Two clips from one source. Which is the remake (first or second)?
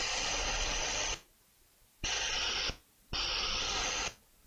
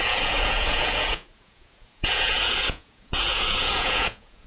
second